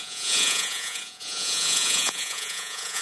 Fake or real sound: fake